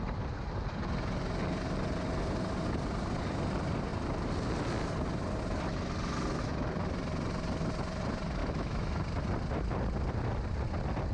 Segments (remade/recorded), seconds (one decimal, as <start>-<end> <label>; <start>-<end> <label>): 0.0-8.4 recorded; 8.4-8.9 remade; 8.9-11.1 recorded